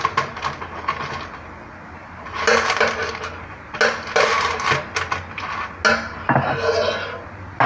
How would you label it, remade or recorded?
recorded